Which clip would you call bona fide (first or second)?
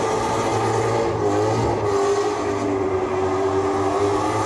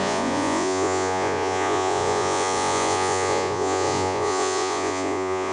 first